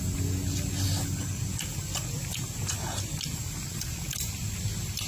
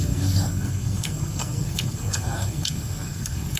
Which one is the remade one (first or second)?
second